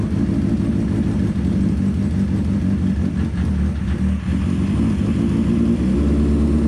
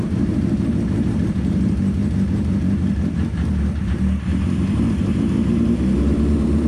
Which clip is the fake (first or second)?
second